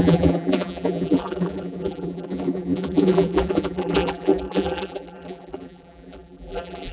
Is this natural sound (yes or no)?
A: no